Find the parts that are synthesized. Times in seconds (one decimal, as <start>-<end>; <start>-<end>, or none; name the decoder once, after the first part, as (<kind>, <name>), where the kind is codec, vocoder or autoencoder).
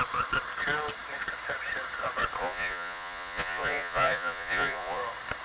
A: 2.4-5.0 (vocoder, Vocos)